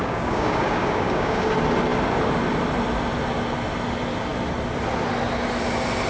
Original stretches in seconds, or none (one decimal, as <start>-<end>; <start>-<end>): 1.5-6.1